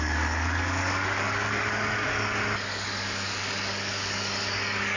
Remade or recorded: remade